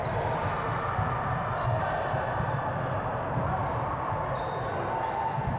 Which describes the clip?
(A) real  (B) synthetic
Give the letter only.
A